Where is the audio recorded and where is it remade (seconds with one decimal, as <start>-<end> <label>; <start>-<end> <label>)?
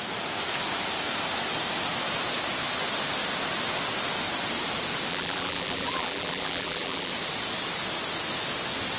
0.0-5.1 recorded; 5.1-7.1 remade; 7.1-9.0 recorded